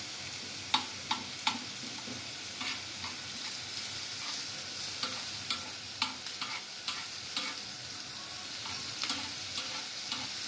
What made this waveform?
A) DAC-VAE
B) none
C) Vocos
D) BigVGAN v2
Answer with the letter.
B